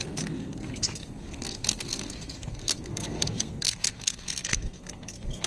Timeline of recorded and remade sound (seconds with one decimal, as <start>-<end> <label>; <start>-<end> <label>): 0.0-5.5 remade